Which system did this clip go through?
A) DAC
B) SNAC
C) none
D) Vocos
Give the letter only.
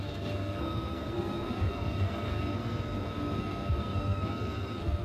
B